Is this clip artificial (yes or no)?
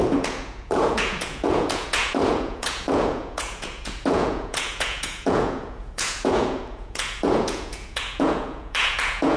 yes